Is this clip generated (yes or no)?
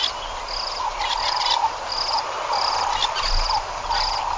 no